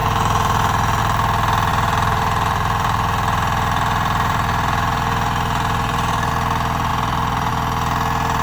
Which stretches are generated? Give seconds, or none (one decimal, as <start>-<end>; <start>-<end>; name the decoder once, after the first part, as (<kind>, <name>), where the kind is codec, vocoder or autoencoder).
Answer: 0.0-1.0 (vocoder, BigVGAN v2); 1.7-6.3; 6.9-7.5